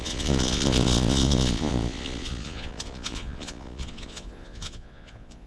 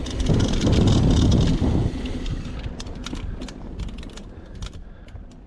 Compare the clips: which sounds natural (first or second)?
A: second